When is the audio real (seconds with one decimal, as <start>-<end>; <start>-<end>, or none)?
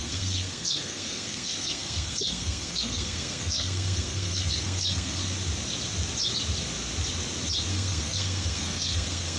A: 5.2-7.7